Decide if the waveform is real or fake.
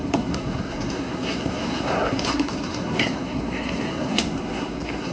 fake